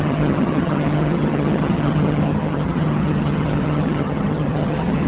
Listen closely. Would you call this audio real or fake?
fake